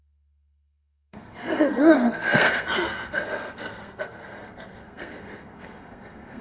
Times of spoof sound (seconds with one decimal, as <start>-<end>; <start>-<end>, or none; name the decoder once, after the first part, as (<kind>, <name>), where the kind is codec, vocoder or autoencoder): 0.0-6.4 (codec, SNAC)